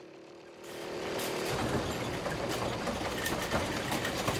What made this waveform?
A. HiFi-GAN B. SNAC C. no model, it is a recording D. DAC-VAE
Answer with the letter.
C